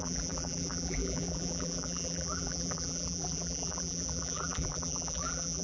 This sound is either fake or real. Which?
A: fake